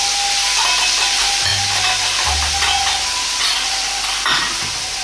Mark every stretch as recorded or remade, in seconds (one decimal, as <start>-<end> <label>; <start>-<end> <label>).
0.0-5.0 recorded